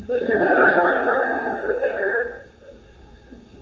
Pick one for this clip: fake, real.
fake